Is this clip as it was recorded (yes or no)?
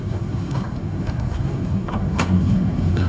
no